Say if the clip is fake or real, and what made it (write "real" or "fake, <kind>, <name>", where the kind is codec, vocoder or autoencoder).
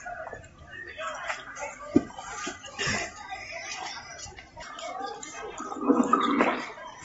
real